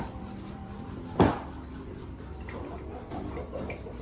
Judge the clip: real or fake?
fake